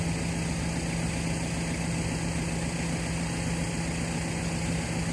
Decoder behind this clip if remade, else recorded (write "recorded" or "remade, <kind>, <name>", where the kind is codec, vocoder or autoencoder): recorded